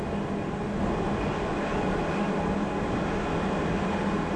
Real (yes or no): yes